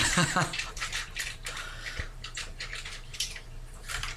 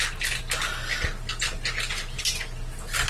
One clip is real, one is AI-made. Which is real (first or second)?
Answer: second